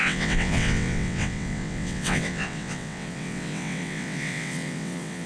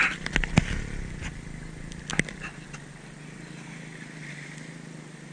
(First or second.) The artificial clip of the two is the first